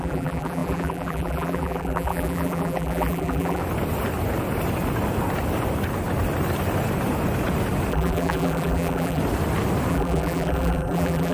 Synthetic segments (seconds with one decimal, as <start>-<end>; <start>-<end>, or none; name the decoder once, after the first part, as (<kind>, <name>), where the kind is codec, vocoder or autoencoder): 0.0-3.6 (vocoder, BigVGAN v2); 7.9-9.2; 9.9-11.3